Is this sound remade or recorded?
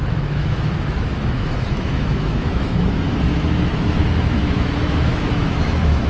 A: remade